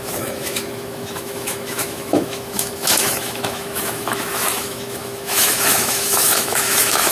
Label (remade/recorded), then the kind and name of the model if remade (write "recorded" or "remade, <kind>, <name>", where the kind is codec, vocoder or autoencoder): remade, autoencoder, DAC-VAE